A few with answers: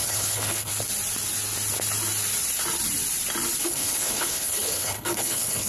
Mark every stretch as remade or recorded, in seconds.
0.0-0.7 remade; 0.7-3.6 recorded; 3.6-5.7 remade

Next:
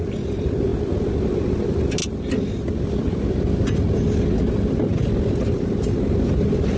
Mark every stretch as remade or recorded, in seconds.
0.0-6.8 recorded

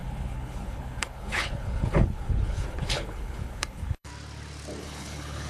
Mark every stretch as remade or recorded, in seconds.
0.0-4.1 remade; 4.1-4.8 recorded; 4.8-5.5 remade

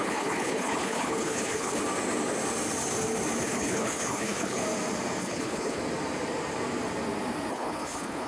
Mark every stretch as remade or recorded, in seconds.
0.0-1.8 remade; 1.8-3.4 recorded; 3.4-4.6 remade; 4.6-5.2 recorded; 5.2-5.8 remade; 5.8-7.5 recorded; 7.5-8.3 remade